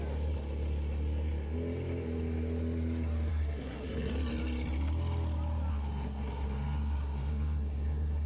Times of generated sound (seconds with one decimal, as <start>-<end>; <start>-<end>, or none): 3.3-4.1; 5.7-8.3